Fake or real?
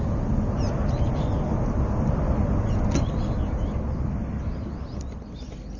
real